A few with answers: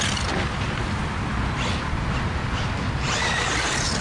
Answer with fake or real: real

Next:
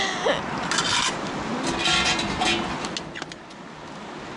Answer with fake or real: real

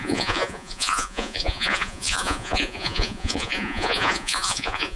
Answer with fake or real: fake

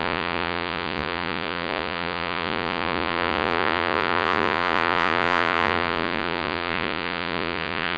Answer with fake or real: fake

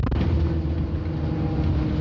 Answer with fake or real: real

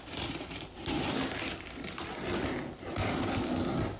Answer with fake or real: real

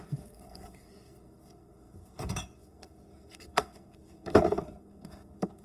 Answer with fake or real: fake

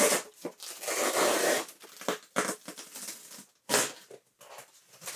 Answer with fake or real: real